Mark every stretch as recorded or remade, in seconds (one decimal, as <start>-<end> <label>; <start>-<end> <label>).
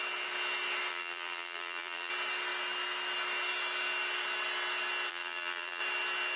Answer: 0.0-0.9 recorded; 0.9-2.1 remade; 2.1-5.1 recorded; 5.1-5.8 remade; 5.8-6.4 recorded